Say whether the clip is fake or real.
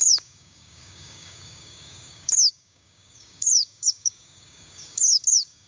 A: fake